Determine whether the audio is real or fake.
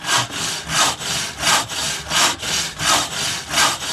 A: real